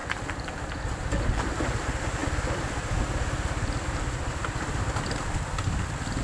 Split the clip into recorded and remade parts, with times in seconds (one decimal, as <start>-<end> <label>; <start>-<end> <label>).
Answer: 0.0-1.5 remade; 1.5-6.2 recorded